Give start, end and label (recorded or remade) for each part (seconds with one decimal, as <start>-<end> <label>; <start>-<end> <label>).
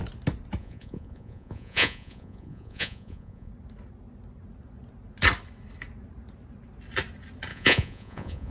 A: 0.0-0.6 recorded; 0.6-3.5 remade; 3.5-7.5 recorded; 7.5-8.5 remade